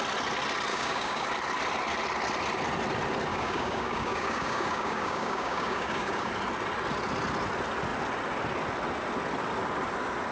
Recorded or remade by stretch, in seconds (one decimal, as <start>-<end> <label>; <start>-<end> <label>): 0.0-0.7 recorded; 0.7-1.3 remade; 1.3-3.3 recorded; 3.3-6.3 remade; 6.3-10.3 recorded